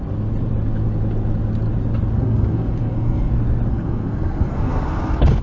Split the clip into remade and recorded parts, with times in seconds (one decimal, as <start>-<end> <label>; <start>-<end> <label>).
0.0-2.2 recorded; 2.2-3.3 remade; 3.3-3.7 recorded; 3.7-5.4 remade